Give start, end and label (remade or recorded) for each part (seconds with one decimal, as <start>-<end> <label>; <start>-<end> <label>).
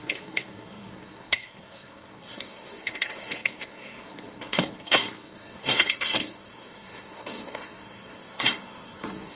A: 0.0-9.4 remade